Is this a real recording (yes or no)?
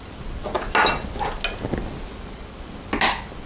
yes